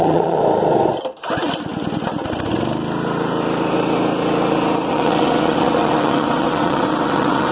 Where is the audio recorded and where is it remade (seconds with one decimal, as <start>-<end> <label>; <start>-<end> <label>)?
0.0-0.4 remade; 0.4-4.9 recorded; 4.9-7.5 remade